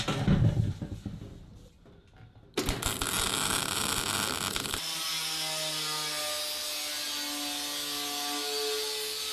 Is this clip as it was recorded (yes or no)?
yes